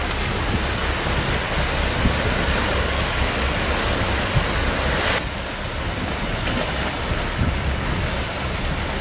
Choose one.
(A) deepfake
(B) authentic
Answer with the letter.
B